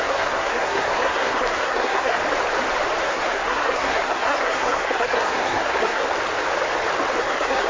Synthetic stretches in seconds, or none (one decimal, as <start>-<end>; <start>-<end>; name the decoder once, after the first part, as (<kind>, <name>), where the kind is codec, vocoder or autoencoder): 0.0-2.2 (codec, SNAC); 3.0-6.0; 7.2-7.7